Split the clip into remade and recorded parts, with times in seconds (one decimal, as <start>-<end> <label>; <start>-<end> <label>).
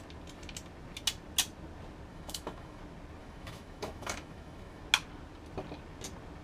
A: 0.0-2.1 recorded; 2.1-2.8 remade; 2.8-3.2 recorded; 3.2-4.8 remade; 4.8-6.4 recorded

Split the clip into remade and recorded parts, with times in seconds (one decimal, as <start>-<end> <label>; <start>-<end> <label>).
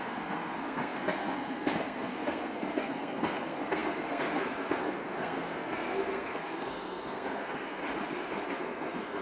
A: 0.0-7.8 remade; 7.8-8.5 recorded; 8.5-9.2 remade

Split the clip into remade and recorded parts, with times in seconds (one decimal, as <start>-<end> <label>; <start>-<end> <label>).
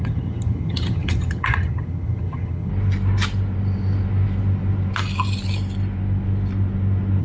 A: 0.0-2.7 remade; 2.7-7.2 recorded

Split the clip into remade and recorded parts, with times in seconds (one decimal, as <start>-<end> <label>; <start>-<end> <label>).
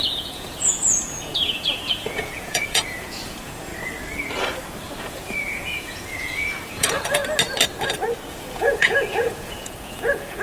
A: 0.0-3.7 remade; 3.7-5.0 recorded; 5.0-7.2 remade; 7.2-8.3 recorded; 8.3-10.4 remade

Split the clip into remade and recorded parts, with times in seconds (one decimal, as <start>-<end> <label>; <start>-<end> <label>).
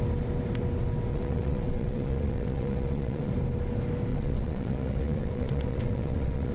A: 0.0-1.1 recorded; 1.1-3.3 remade; 3.3-4.1 recorded; 4.1-6.5 remade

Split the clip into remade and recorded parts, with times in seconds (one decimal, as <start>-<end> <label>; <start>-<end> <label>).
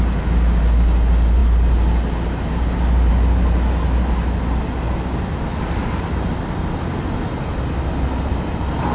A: 0.0-8.9 recorded